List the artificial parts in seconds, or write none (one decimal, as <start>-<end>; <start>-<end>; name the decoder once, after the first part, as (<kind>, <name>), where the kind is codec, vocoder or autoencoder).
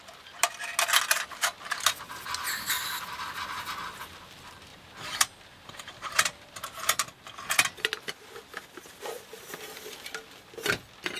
4.7-7.0 (vocoder, BigVGAN v2)